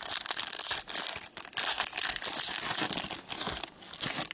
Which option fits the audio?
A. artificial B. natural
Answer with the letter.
B